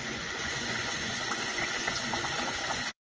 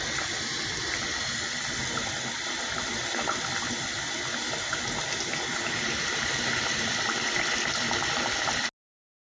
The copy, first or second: first